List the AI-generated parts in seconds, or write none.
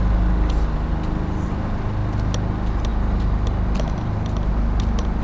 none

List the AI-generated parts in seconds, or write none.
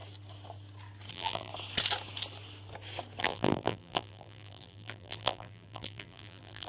1.1-1.5; 3.2-6.7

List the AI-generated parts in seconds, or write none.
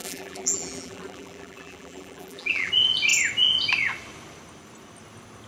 0.0-2.7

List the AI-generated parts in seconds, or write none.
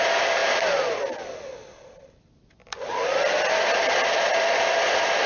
0.0-5.3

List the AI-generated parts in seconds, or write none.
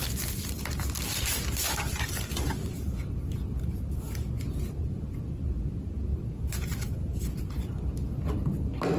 1.9-2.8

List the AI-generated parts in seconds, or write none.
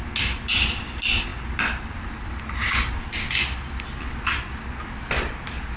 1.3-1.9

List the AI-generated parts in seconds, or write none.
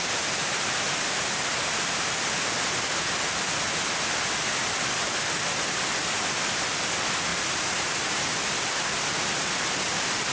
7.3-8.8